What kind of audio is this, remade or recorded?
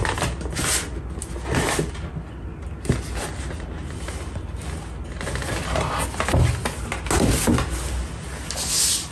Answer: recorded